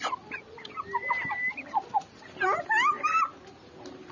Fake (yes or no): no